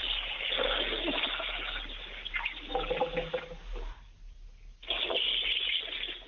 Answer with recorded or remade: recorded